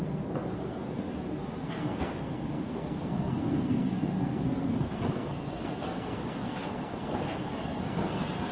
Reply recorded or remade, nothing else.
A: remade